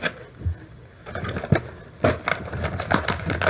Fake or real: real